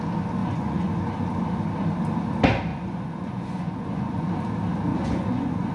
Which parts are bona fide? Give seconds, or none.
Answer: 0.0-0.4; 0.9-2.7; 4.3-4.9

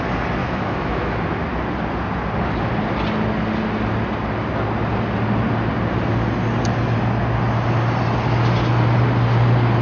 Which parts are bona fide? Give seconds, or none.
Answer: 0.0-0.4; 1.2-9.8